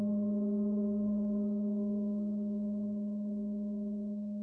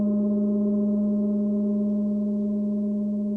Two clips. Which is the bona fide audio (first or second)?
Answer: second